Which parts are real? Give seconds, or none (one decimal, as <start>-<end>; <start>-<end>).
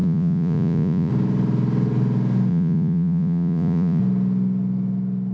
1.1-2.5; 4.0-5.3